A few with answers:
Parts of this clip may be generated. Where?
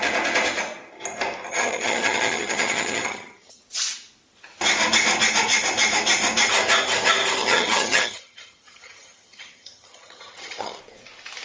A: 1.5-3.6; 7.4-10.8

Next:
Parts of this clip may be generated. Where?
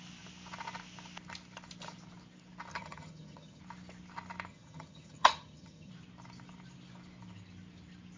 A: 2.7-3.6; 4.5-5.9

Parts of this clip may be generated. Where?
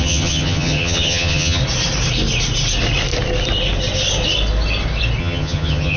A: 0.0-1.6; 5.2-6.0